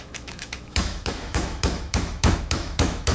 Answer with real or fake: fake